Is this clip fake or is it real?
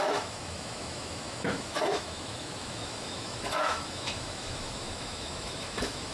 fake